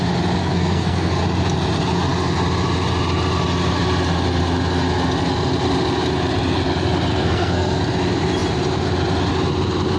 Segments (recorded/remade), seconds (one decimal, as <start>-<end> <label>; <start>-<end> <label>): 0.0-0.4 recorded; 0.4-1.2 remade; 1.2-7.1 recorded; 7.1-7.8 remade; 7.8-10.0 recorded